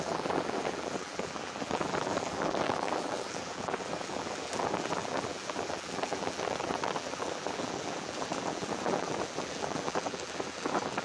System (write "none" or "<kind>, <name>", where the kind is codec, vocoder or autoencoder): vocoder, BigVGAN v2